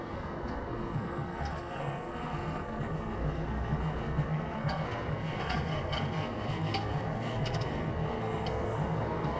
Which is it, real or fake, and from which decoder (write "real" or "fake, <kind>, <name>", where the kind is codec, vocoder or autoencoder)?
fake, codec, SNAC